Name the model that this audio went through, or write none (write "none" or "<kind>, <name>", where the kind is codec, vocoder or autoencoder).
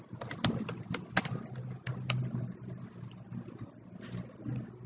none